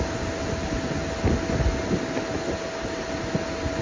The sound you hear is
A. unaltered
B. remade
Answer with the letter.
A